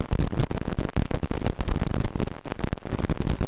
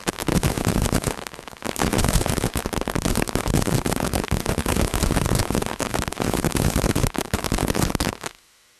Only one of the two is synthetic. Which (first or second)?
second